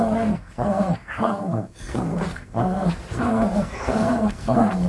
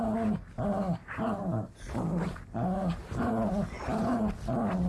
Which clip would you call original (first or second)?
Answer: second